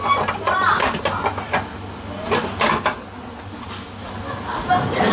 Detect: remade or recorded recorded